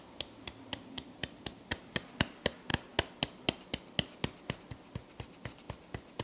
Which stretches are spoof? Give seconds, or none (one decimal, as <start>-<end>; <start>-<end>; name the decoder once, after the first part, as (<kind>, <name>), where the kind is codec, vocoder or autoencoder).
none